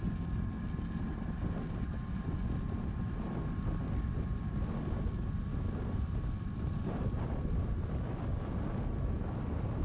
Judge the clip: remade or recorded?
recorded